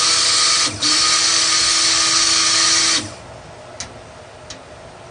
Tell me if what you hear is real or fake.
real